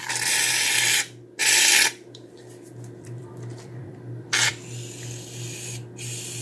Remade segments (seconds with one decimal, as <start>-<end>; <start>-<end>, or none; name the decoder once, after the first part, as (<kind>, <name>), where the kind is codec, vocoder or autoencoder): 1.4-4.5 (vocoder, BigVGAN v2)